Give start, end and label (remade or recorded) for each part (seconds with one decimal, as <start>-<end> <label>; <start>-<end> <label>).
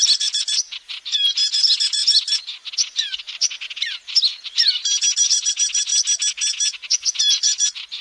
0.0-2.0 remade; 2.0-3.1 recorded; 3.1-5.9 remade; 5.9-7.2 recorded; 7.2-8.0 remade